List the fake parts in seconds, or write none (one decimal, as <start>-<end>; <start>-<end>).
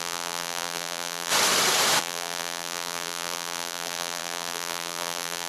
0.0-1.3; 2.0-5.5